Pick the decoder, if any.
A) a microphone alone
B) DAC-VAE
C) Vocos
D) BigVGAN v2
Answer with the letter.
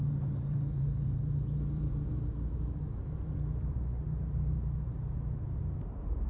D